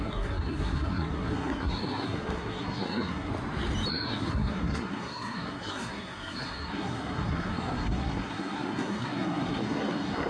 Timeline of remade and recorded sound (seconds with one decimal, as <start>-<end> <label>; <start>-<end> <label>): 0.0-3.3 remade; 3.3-3.9 recorded; 3.9-10.3 remade